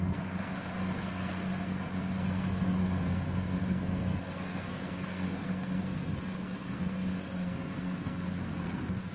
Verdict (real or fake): fake